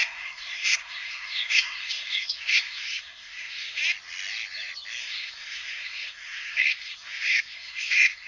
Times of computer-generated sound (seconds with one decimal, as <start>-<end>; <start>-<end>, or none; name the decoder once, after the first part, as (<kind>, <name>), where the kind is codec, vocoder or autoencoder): 0.0-3.8 (codec, SNAC); 5.0-8.3